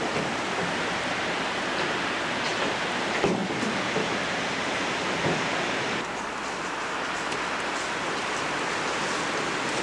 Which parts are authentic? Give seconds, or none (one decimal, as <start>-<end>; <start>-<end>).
0.0-9.8